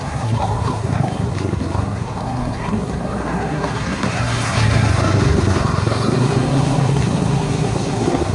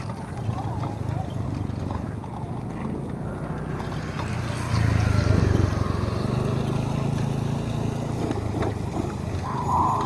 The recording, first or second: second